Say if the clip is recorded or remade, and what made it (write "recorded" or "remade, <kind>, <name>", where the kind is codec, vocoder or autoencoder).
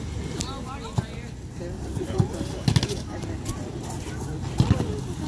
recorded